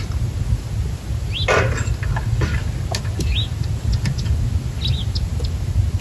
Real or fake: real